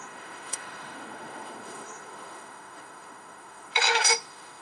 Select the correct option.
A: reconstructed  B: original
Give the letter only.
A